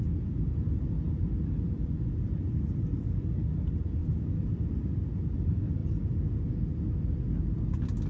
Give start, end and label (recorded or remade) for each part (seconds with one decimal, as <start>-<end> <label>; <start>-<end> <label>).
0.0-8.1 recorded